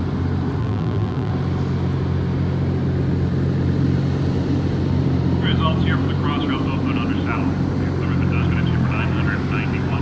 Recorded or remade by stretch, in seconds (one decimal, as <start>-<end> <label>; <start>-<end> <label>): 0.0-0.6 recorded; 0.6-1.3 remade; 1.3-10.0 recorded